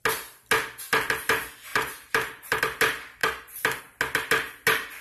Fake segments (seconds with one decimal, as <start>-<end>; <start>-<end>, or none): 1.7-2.6